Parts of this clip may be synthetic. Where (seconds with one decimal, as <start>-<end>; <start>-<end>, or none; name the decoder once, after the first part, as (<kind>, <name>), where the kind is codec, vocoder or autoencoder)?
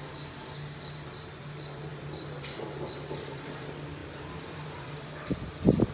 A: 4.0-5.0 (vocoder, BigVGAN v2)